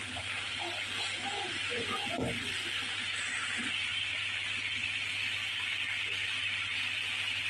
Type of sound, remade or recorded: remade